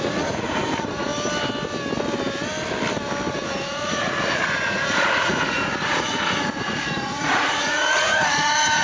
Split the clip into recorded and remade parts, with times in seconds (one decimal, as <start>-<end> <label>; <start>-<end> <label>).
0.0-1.1 remade; 1.1-3.3 recorded; 3.3-8.8 remade